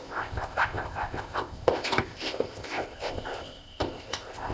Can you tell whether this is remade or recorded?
remade